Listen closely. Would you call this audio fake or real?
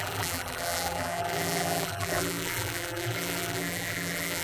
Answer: fake